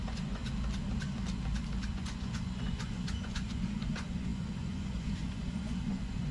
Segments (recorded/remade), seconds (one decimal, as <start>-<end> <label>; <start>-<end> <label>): 0.0-0.4 remade; 0.4-1.9 recorded; 1.9-6.3 remade